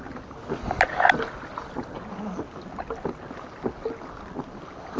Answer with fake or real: real